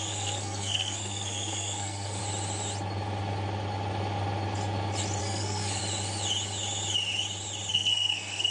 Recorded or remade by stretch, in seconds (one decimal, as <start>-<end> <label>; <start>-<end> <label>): 0.0-2.2 remade; 2.2-5.2 recorded; 5.2-5.8 remade; 5.8-7.7 recorded; 7.7-8.5 remade